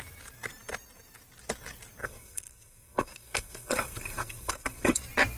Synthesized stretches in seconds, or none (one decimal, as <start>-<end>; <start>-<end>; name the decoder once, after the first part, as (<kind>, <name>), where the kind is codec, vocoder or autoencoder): 2.0-5.0 (codec, SNAC)